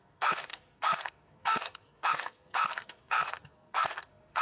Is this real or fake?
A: fake